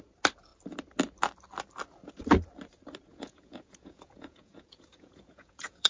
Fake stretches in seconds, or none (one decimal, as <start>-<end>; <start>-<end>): 3.1-5.9